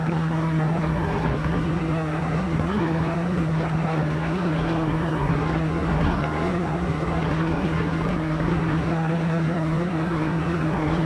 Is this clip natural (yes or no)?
no